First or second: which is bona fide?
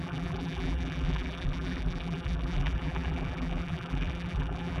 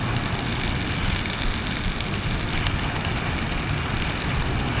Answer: second